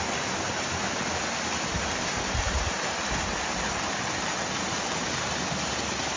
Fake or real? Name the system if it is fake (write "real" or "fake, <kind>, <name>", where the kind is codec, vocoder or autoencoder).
real